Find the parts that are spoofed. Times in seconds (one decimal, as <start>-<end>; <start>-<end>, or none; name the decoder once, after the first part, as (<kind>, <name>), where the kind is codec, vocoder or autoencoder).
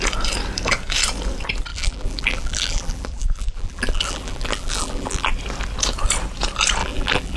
1.7-5.3 (vocoder, BigVGAN v2); 6.8-7.4